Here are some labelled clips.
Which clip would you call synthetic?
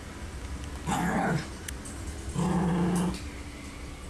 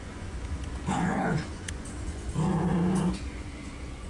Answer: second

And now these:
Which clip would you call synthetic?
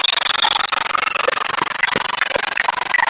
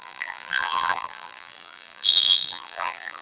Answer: second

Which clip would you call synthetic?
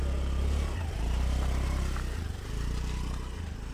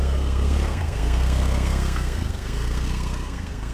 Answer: second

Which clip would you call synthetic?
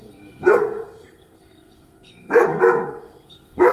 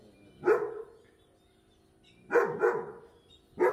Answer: first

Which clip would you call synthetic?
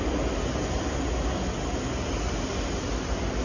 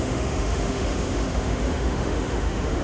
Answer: second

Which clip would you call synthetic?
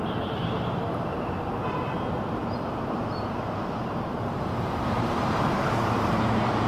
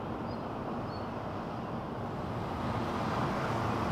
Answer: first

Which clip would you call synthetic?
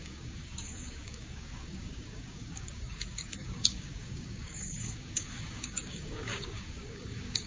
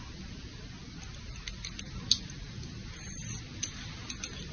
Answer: first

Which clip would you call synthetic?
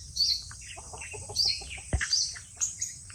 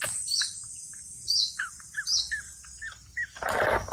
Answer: first